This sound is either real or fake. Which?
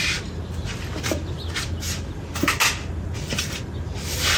real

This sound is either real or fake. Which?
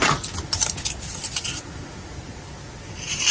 real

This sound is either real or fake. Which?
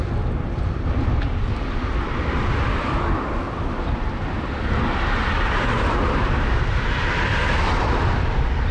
fake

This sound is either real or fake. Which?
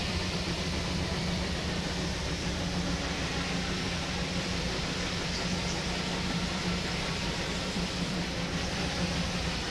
fake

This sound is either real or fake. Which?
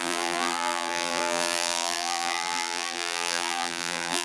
fake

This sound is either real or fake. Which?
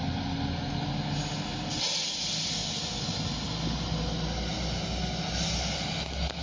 real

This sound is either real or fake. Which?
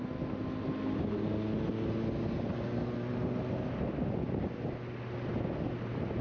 real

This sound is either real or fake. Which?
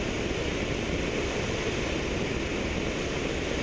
real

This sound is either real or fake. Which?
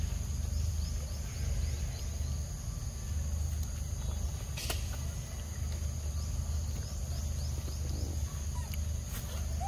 real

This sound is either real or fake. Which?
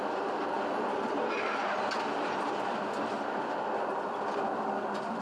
real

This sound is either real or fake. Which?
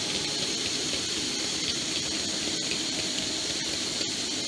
fake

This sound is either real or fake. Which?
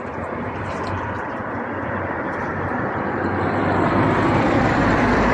fake